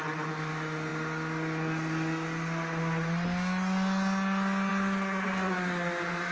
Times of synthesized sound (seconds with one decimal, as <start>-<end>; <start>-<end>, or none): none